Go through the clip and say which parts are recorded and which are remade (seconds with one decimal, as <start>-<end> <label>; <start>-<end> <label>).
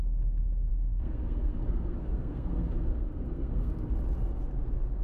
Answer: 0.0-0.7 recorded; 0.7-3.7 remade; 3.7-5.0 recorded